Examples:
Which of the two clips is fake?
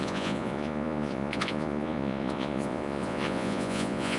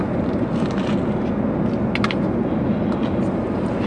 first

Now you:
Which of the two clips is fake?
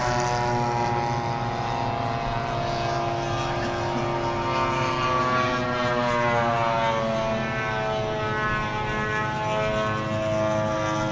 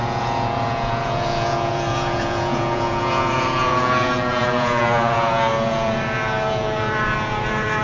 second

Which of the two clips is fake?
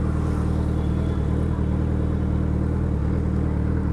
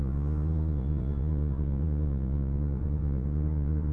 second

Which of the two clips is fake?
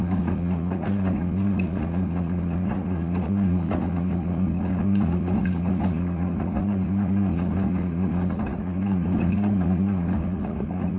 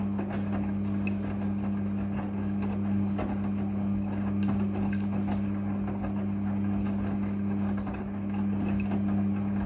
first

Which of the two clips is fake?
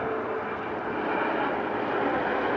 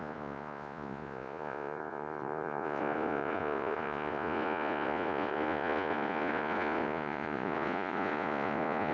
second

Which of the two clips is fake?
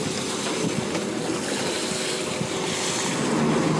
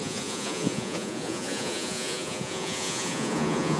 second